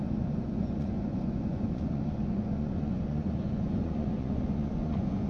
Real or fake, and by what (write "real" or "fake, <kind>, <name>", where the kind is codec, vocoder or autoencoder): fake, vocoder, Vocos